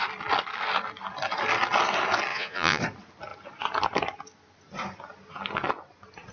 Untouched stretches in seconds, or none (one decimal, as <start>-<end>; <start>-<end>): 0.0-2.3; 2.8-6.3

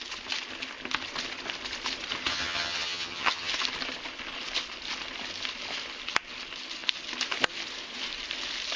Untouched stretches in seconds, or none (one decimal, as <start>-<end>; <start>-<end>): 0.0-2.3; 3.5-8.8

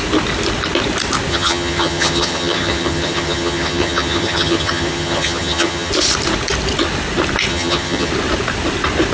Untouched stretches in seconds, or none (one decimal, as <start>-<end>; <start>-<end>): 0.0-1.3; 5.9-7.5; 8.1-9.1

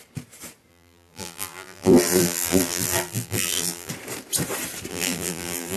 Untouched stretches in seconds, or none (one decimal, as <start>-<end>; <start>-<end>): 0.0-0.7; 3.9-4.9